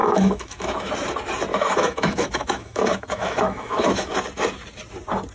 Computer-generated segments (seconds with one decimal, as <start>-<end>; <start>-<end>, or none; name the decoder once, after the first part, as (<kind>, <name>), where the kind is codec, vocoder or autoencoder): 0.0-0.9 (autoencoder, DAC-VAE); 1.5-4.1